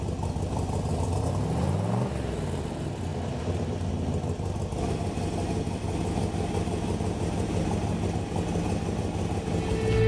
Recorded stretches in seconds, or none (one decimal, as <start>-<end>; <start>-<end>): 0.0-10.1